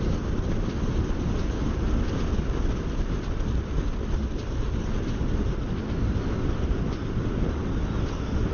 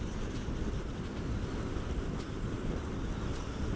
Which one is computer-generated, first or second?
second